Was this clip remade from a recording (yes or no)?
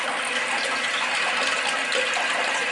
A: no